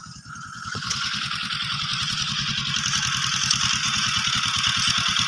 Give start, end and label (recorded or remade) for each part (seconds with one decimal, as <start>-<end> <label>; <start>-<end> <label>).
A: 0.0-2.7 remade; 2.7-3.8 recorded; 3.8-4.3 remade; 4.3-5.3 recorded